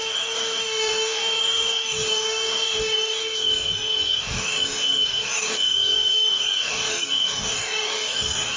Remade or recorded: remade